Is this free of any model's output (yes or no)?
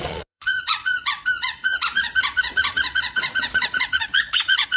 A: no